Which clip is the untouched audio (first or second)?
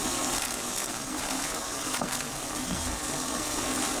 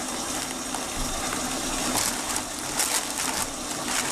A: second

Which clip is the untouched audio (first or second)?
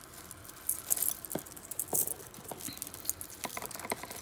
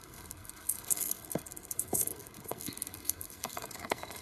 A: first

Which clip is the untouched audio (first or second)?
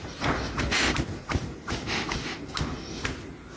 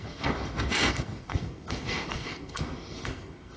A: first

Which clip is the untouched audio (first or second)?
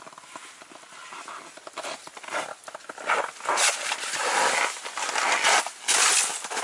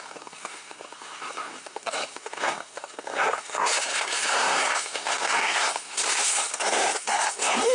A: first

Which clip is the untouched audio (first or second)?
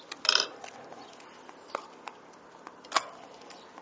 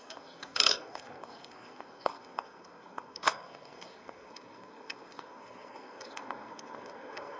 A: first